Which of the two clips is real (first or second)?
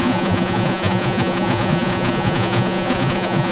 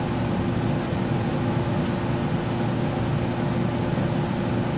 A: second